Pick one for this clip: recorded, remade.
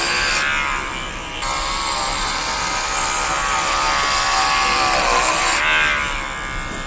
recorded